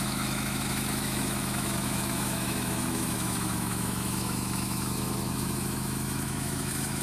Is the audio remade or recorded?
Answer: remade